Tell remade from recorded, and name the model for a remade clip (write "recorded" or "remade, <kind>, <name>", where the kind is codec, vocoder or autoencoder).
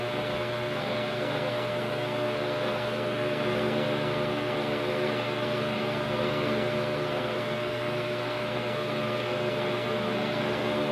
remade, codec, SNAC